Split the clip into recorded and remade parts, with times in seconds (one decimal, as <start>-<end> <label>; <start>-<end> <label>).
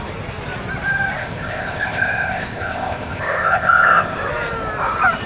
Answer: 0.0-1.2 recorded; 1.2-4.2 remade; 4.2-5.3 recorded